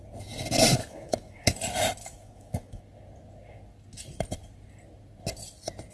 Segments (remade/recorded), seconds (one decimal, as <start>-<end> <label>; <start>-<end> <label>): 0.0-0.8 recorded; 0.8-1.5 remade; 1.5-2.0 recorded; 2.0-2.8 remade; 2.8-5.9 recorded